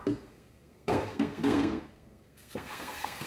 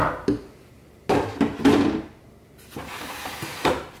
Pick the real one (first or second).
second